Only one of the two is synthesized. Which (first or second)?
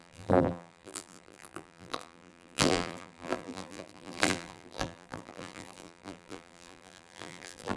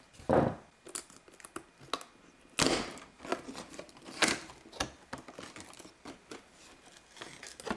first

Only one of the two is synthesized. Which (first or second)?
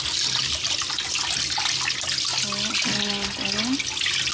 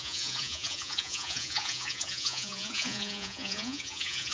second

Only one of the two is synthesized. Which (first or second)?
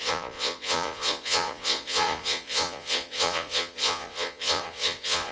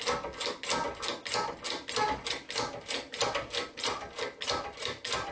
first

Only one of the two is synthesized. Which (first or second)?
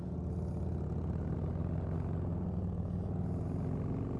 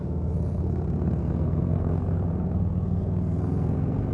second